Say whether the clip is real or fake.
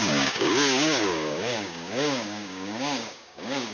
fake